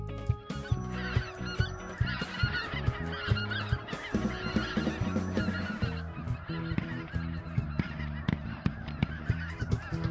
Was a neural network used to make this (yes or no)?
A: no